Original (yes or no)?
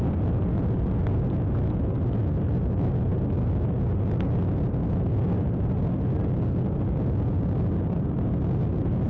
yes